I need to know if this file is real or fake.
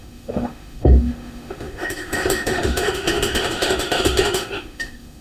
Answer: fake